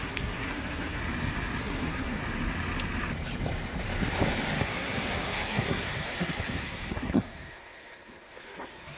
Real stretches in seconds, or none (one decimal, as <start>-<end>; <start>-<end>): 1.0-1.6; 2.2-4.6